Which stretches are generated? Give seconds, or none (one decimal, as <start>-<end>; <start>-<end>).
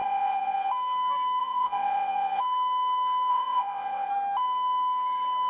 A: 0.0-0.7; 1.4-2.4; 3.3-4.1